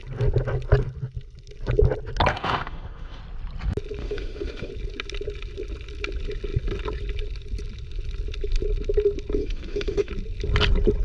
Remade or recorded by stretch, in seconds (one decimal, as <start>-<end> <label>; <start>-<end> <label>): 0.0-2.3 recorded; 2.3-3.2 remade; 3.2-4.0 recorded; 4.0-4.7 remade; 4.7-9.4 recorded; 9.4-10.1 remade; 10.1-11.0 recorded